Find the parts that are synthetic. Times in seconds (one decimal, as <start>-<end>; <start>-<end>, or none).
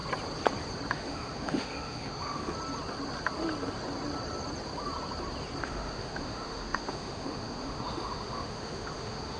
0.9-2.4; 5.6-9.4